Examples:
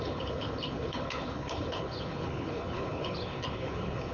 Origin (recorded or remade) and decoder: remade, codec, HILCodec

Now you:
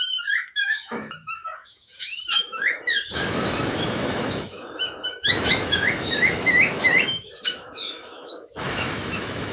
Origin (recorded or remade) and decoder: remade, autoencoder, DAC-VAE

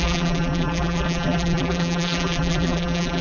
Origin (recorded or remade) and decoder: remade, vocoder, BigVGAN v2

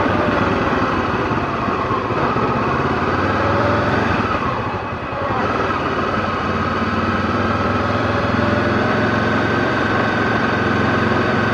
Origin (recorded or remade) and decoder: remade, vocoder, BigVGAN v2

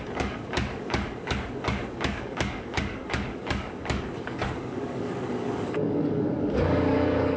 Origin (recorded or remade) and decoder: remade, codec, DAC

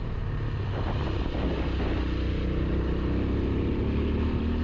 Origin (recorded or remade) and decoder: recorded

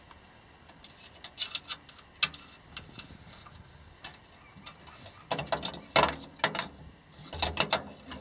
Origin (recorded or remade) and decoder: recorded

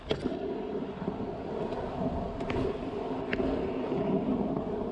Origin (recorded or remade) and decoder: recorded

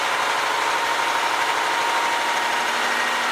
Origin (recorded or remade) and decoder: recorded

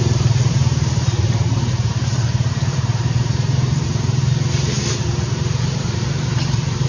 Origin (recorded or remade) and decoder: remade, vocoder, BigVGAN v2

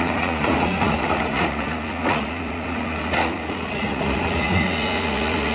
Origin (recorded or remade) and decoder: remade, vocoder, Vocos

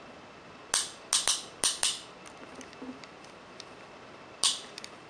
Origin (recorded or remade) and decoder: recorded